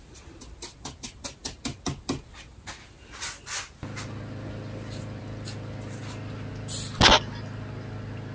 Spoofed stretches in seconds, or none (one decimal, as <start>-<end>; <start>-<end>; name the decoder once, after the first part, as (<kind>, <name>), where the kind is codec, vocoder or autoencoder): none